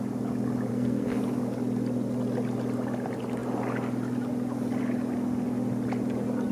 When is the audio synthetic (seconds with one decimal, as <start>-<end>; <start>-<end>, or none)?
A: 0.7-1.2